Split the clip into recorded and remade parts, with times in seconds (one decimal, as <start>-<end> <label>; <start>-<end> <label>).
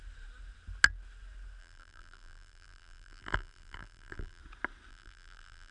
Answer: 0.0-1.6 recorded; 1.6-4.4 remade; 4.4-4.9 recorded; 4.9-5.7 remade